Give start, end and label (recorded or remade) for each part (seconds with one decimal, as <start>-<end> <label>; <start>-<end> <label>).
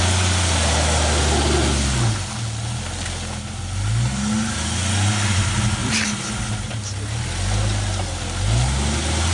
0.0-9.3 recorded